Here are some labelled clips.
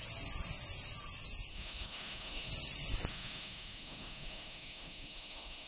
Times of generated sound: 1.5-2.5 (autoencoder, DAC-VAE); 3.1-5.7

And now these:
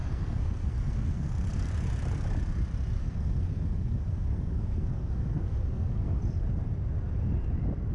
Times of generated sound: 0.0-1.7 (codec, SNAC); 3.0-6.2

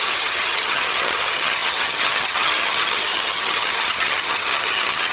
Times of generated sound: 0.0-5.1 (vocoder, HiFi-GAN)